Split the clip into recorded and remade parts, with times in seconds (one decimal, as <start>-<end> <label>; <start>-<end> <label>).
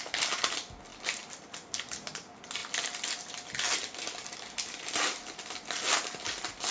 0.0-0.9 recorded; 0.9-2.1 remade; 2.1-6.7 recorded